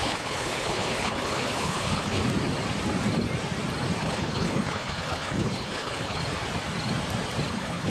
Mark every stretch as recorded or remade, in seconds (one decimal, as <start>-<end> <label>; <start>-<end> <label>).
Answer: 0.0-2.2 remade; 2.2-4.0 recorded; 4.0-6.2 remade; 6.2-7.5 recorded; 7.5-7.9 remade